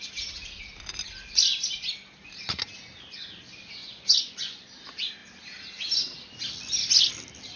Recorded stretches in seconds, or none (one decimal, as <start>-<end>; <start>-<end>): 0.0-3.8; 4.7-7.6